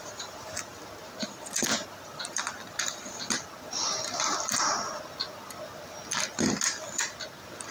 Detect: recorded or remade recorded